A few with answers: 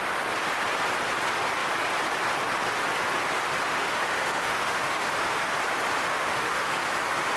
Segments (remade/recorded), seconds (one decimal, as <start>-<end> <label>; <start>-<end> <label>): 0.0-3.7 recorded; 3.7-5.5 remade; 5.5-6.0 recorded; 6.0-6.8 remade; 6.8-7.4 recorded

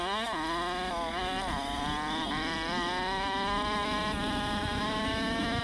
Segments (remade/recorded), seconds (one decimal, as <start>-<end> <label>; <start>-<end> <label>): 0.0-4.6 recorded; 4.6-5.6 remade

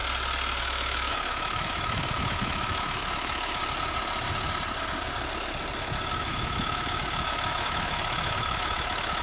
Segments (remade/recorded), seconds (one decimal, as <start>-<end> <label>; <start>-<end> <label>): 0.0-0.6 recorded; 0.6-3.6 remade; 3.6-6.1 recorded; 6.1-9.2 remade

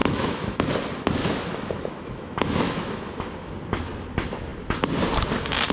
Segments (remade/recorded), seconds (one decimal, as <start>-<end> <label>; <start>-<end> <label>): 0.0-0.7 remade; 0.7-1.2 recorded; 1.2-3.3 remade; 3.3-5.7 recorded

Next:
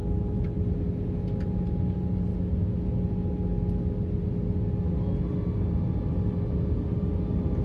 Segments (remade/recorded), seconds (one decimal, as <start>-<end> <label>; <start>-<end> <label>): 0.0-0.6 remade; 0.6-7.6 recorded

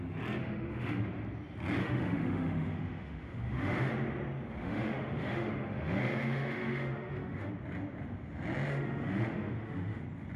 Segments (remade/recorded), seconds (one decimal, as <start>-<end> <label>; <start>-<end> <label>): 0.0-0.4 recorded; 0.4-1.0 remade; 1.0-1.8 recorded; 1.8-3.9 remade; 3.9-4.6 recorded; 4.6-7.5 remade; 7.5-8.7 recorded; 8.7-10.0 remade; 10.0-10.4 recorded

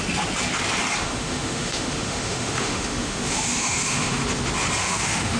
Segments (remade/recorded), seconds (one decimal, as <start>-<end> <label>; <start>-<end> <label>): 0.0-1.0 recorded; 1.0-4.2 remade; 4.2-4.8 recorded; 4.8-5.4 remade

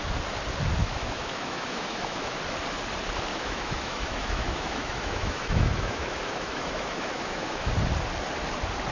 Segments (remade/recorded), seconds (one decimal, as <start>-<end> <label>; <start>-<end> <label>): 0.0-0.8 recorded; 0.8-2.4 remade; 2.4-3.3 recorded; 3.3-7.7 remade; 7.7-8.9 recorded